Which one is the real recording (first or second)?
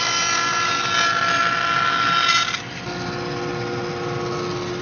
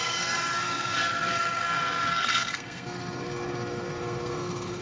first